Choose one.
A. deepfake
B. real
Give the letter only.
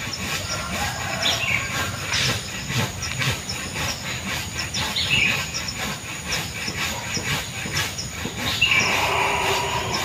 B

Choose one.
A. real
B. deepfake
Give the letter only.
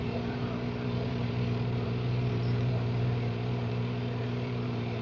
B